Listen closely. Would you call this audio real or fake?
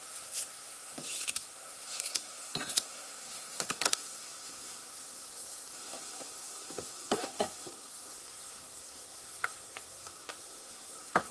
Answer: fake